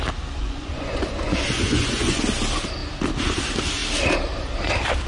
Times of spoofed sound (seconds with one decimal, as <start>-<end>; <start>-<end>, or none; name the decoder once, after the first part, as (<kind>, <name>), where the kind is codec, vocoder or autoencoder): 0.4-2.2 (vocoder, Vocos)